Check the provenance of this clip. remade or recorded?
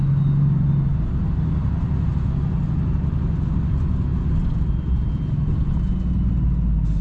recorded